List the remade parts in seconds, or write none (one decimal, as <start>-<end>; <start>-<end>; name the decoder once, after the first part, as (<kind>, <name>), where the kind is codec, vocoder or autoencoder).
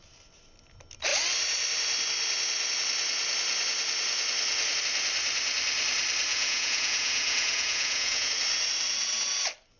6.3-8.3 (vocoder, Vocos)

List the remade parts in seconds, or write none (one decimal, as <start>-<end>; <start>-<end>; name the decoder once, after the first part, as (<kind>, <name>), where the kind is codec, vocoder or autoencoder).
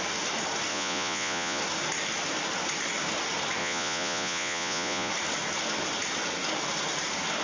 0.7-1.6 (vocoder, Vocos); 3.6-5.1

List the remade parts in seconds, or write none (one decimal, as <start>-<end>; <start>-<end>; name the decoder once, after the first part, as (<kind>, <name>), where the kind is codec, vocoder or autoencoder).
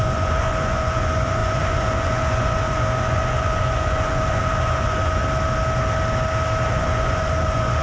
0.0-5.2 (vocoder, Vocos); 6.7-7.8